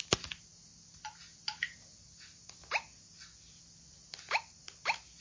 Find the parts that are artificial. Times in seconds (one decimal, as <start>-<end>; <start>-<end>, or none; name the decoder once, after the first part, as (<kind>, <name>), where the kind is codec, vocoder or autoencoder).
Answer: none